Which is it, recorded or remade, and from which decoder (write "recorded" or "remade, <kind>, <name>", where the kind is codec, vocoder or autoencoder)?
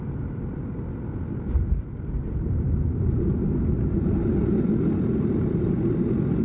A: recorded